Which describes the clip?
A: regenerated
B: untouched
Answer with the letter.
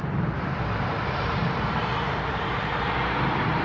A